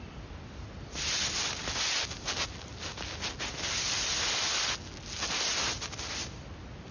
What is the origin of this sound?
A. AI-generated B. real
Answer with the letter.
B